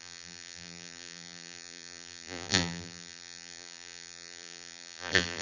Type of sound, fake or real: fake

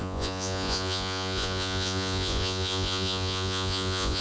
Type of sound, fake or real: fake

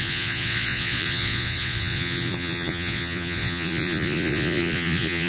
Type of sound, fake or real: fake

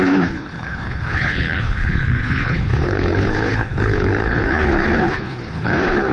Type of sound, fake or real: fake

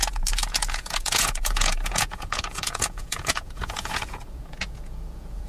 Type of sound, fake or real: fake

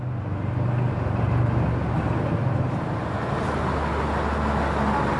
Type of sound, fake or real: real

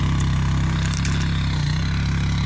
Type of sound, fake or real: real